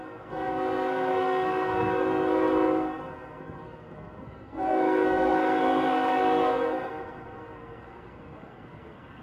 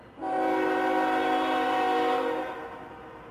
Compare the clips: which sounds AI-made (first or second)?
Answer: first